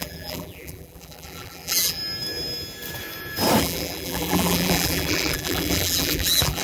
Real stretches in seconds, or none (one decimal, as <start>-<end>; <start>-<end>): 2.0-3.6